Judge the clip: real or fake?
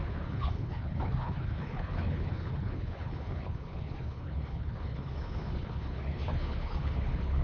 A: fake